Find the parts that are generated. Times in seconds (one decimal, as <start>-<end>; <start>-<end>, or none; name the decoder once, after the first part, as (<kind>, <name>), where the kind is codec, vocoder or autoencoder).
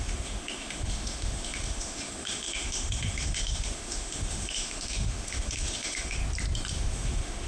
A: 0.0-6.2 (autoencoder, DAC-VAE); 6.7-7.5